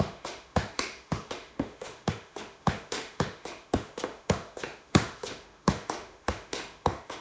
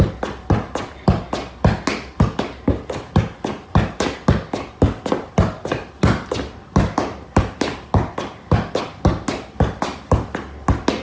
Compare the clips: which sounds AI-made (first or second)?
first